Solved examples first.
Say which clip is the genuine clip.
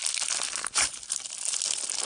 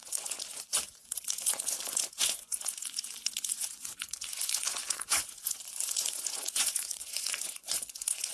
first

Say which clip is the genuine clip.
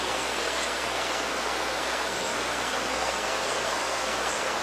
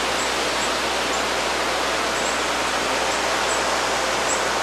second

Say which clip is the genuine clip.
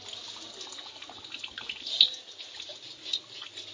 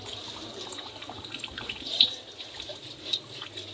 first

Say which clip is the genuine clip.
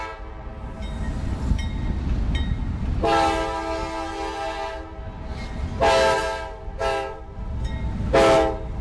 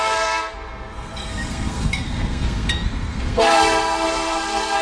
first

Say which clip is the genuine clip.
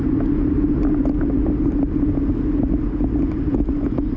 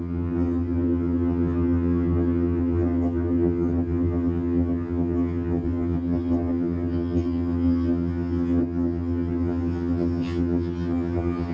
first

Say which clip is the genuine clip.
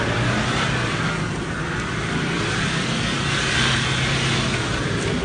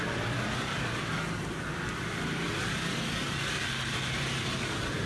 first